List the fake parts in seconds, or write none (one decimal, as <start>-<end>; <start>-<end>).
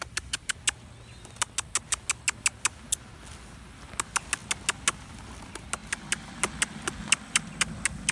none